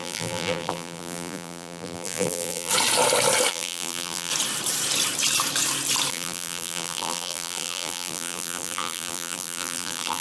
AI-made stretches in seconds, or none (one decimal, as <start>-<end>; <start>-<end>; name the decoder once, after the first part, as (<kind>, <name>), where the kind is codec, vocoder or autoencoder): 0.0-2.7 (vocoder, BigVGAN v2); 3.5-4.3; 6.1-10.2